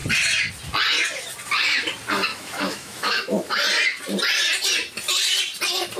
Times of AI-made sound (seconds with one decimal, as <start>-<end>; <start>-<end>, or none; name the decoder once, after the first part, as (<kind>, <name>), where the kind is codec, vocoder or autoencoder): 2.3-3.6 (autoencoder, DAC-VAE)